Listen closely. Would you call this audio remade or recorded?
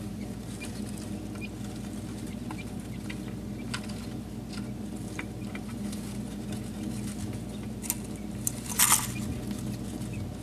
recorded